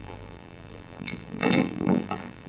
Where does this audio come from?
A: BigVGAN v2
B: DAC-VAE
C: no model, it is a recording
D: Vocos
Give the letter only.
A